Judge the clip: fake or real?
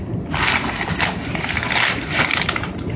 real